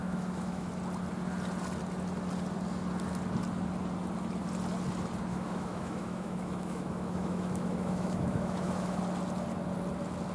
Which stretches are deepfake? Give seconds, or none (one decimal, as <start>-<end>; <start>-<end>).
0.0-0.7; 5.3-9.0